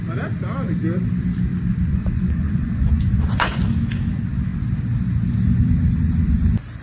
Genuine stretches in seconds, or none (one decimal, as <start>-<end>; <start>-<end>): 0.0-1.7; 3.6-6.8